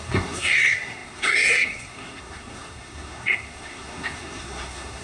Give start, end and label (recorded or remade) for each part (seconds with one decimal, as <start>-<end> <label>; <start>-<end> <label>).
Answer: 0.0-5.0 remade